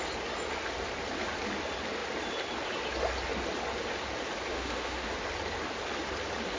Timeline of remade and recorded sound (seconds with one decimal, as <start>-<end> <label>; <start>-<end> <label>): 0.0-4.5 recorded; 4.5-5.1 remade; 5.1-6.6 recorded